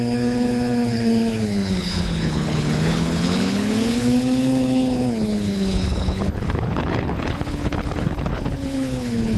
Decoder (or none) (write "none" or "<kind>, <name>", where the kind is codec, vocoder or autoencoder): codec, HILCodec